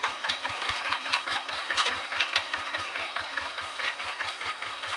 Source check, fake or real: fake